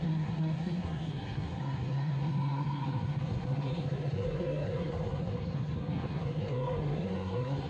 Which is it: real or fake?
fake